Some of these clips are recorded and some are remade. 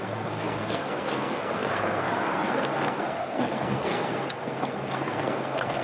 remade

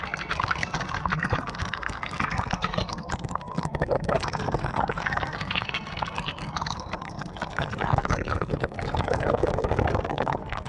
remade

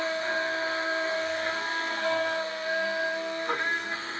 remade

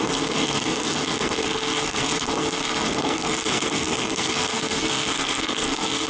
remade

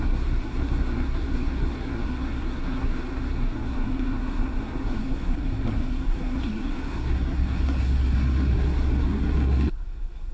remade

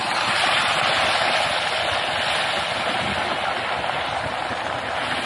recorded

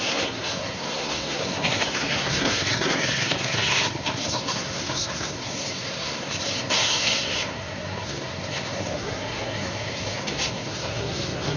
remade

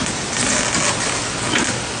recorded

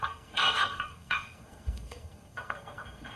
remade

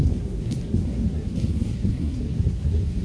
remade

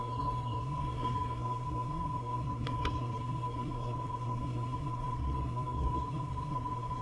remade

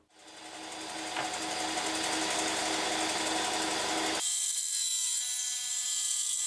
recorded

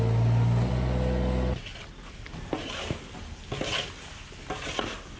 recorded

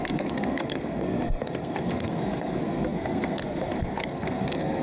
remade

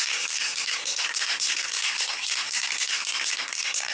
remade